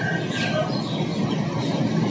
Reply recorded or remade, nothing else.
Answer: recorded